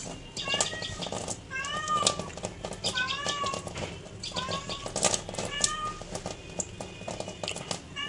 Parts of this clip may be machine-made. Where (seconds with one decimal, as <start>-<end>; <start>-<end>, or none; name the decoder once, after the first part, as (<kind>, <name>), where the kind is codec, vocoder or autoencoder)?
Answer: none